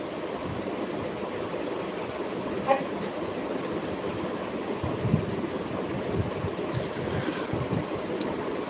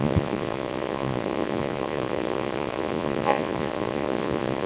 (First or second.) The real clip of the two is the first